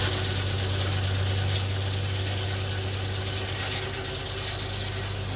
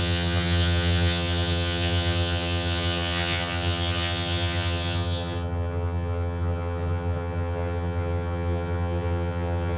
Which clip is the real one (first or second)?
first